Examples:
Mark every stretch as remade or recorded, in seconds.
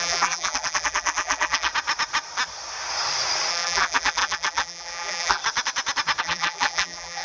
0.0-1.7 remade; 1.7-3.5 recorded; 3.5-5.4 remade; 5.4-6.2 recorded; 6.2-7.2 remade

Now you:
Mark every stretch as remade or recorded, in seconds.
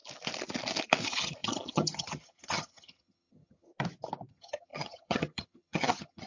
0.0-1.0 recorded; 1.0-3.7 remade; 3.7-4.3 recorded; 4.3-6.3 remade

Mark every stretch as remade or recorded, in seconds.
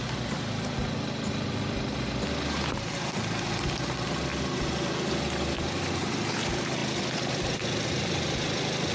0.0-1.9 remade; 1.9-2.9 recorded; 2.9-4.3 remade; 4.3-6.3 recorded; 6.3-6.8 remade; 6.8-7.3 recorded; 7.3-8.9 remade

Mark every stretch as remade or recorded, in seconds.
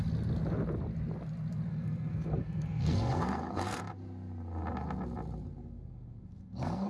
0.0-1.7 recorded; 1.7-3.8 remade; 3.8-5.6 recorded; 5.6-6.9 remade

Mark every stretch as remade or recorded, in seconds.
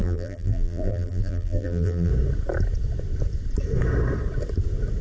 0.0-2.1 remade; 2.1-5.0 recorded